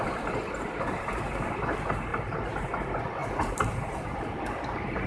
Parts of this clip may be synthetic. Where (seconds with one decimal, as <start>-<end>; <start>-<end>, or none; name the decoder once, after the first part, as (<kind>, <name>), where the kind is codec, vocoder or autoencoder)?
2.1-2.7 (vocoder, BigVGAN v2); 3.2-4.0